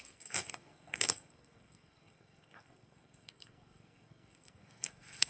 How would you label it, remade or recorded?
remade